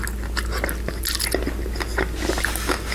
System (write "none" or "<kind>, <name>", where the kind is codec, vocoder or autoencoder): none